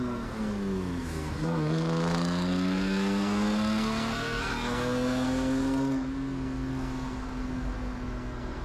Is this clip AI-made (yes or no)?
yes